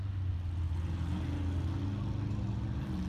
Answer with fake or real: real